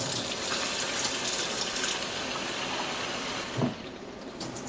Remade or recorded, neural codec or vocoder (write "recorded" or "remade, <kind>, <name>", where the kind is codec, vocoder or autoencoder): recorded